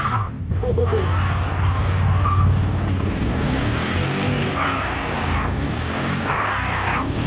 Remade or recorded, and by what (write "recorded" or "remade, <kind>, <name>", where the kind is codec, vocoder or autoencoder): remade, codec, DAC